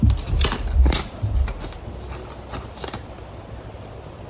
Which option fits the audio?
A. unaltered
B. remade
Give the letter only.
A